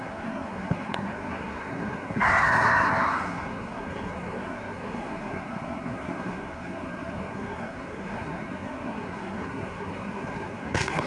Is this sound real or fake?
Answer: fake